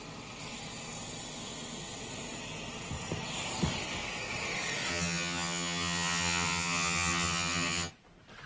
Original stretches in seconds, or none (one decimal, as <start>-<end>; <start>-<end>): 0.0-4.9; 7.9-8.5